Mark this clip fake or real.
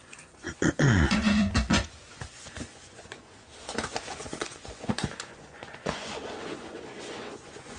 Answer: fake